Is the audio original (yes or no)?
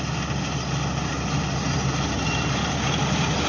yes